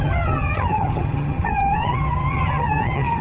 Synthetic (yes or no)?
yes